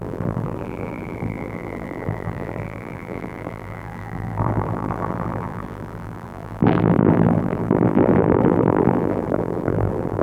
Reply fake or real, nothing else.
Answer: fake